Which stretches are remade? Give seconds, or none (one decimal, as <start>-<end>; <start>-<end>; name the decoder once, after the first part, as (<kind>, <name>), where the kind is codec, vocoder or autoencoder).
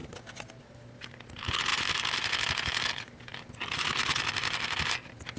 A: none